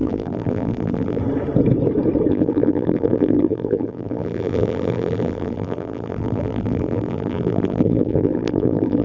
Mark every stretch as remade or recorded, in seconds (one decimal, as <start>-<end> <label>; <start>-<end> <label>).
0.0-1.2 remade; 1.2-2.3 recorded; 2.3-9.0 remade